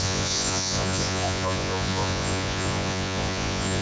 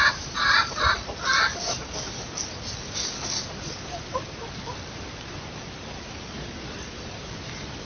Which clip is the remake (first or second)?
first